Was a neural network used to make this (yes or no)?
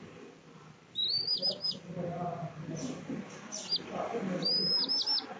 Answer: no